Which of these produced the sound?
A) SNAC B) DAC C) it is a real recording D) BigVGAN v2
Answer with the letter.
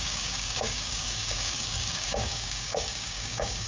B